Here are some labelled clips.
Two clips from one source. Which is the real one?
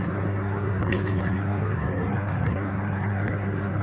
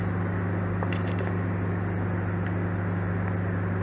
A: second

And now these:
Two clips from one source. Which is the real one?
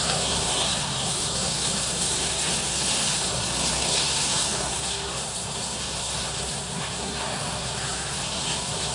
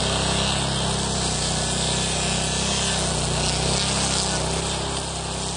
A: second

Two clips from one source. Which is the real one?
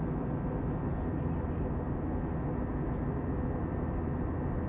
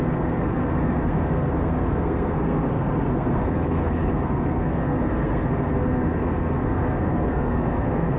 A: first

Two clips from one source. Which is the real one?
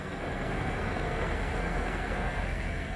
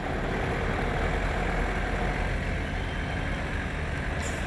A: second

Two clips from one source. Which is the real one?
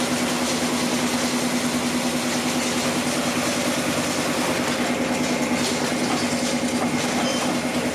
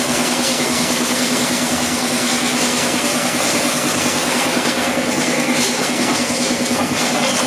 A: first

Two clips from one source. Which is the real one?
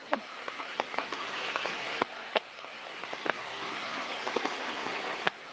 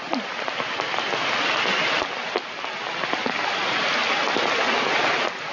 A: second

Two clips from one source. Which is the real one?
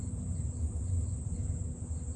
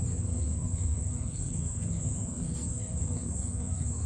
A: first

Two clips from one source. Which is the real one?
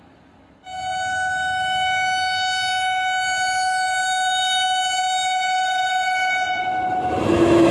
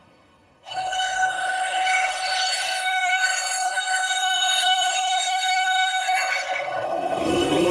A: first